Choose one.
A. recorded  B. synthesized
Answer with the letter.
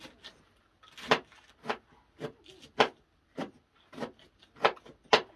A